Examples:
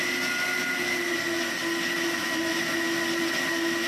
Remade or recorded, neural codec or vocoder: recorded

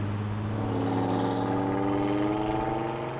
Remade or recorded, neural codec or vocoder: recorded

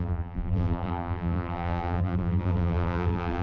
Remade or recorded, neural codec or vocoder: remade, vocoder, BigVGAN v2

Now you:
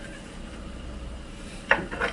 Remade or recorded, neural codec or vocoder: remade, vocoder, BigVGAN v2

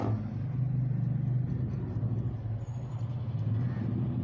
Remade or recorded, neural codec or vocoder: recorded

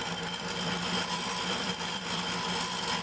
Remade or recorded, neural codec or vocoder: remade, vocoder, BigVGAN v2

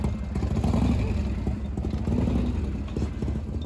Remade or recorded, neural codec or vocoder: recorded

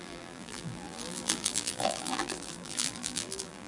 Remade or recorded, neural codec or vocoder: remade, vocoder, BigVGAN v2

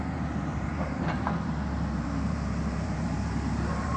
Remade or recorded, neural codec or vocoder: remade, vocoder, BigVGAN v2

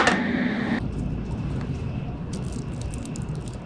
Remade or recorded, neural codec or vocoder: recorded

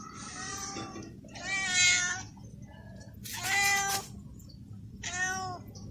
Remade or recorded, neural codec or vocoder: recorded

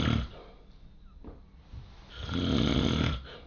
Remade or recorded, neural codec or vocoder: recorded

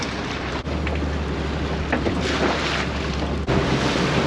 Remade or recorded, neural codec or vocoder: recorded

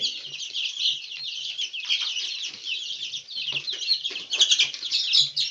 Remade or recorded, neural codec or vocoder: recorded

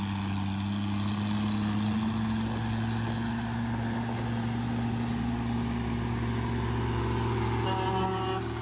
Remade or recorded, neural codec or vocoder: recorded